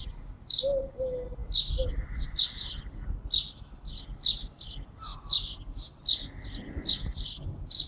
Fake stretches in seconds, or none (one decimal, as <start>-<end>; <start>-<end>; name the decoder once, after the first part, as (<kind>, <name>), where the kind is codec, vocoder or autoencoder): none